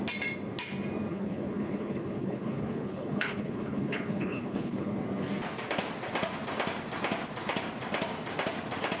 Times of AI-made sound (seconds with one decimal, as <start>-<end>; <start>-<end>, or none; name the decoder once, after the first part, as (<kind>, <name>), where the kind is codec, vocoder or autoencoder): 1.1-4.9 (codec, HILCodec)